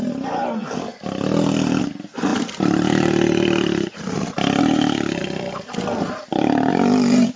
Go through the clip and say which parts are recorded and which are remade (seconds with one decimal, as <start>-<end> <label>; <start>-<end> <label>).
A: 0.0-0.9 recorded; 0.9-1.8 remade; 1.8-2.3 recorded; 2.3-4.6 remade; 4.6-5.2 recorded; 5.2-6.7 remade; 6.7-7.4 recorded